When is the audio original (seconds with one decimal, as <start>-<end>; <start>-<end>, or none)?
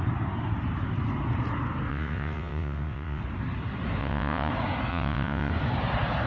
0.0-1.9; 3.2-4.0; 4.5-4.9; 5.5-6.3